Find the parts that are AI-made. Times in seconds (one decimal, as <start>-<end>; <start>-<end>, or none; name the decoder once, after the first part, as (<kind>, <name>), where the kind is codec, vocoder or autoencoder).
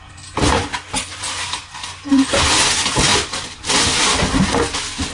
none